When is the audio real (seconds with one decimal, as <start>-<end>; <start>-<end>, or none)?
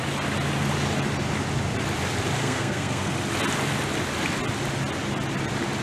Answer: 0.0-2.4; 3.1-5.8